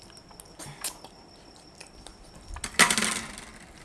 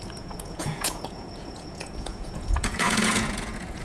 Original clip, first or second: first